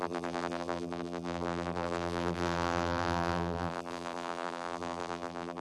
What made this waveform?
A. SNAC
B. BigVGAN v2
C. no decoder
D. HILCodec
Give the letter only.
B